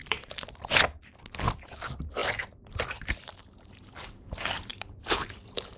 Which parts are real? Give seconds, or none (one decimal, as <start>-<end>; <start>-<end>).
0.7-4.7